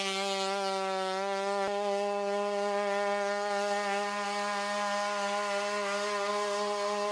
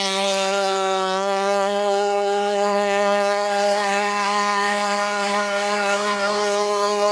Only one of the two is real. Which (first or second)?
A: first